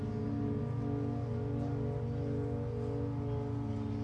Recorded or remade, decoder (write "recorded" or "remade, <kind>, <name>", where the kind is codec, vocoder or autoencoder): recorded